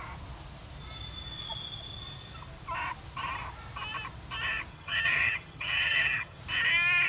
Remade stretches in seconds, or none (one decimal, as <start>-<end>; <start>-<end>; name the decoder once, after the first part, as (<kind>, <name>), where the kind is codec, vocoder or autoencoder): 4.7-6.4 (vocoder, HiFi-GAN)